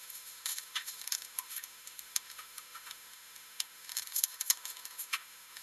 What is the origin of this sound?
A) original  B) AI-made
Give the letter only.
B